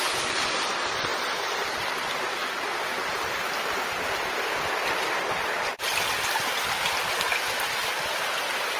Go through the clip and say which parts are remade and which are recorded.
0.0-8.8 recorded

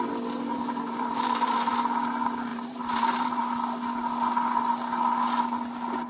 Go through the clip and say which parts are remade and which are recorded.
0.0-0.5 recorded; 0.5-1.7 remade; 1.7-2.5 recorded; 2.5-3.4 remade; 3.4-6.1 recorded

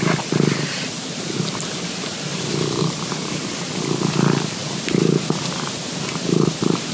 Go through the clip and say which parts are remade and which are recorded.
0.0-6.9 recorded

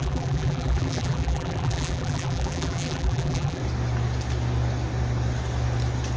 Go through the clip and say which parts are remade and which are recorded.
0.0-3.6 remade; 3.6-6.2 recorded

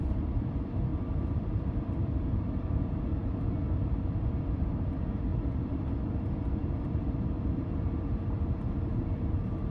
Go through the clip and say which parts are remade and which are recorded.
0.0-3.1 remade; 3.1-3.8 recorded; 3.8-9.7 remade

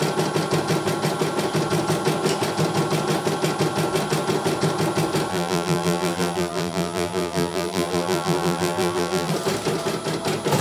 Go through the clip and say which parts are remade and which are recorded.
0.0-5.3 recorded; 5.3-9.3 remade; 9.3-10.6 recorded